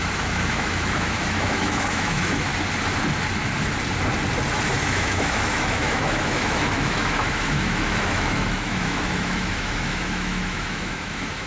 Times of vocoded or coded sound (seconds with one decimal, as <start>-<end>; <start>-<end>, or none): 0.0-2.5; 4.7-11.5